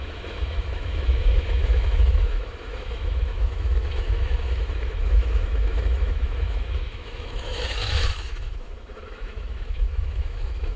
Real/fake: fake